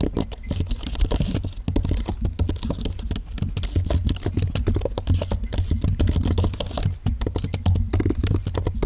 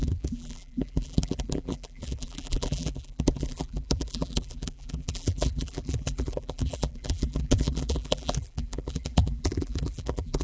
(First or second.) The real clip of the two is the first